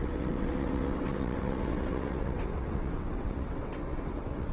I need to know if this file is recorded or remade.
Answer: remade